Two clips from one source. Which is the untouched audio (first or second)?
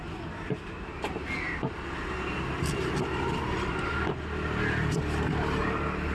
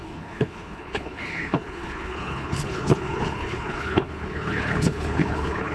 first